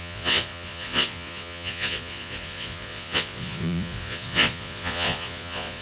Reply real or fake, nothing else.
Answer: fake